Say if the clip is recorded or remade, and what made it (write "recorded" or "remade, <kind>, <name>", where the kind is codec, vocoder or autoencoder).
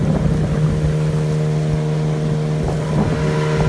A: recorded